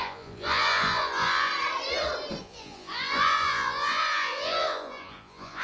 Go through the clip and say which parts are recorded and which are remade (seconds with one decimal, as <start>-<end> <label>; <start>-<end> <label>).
0.0-1.5 remade; 1.5-2.4 recorded; 2.4-5.6 remade